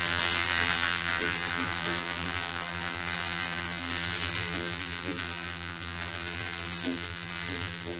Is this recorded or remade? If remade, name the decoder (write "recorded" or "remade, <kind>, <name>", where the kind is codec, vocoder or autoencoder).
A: remade, vocoder, BigVGAN v2